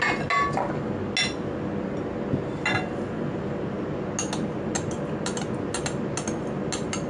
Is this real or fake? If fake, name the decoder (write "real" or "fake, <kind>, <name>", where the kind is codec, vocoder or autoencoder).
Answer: real